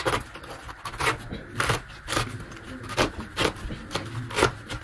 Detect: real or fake real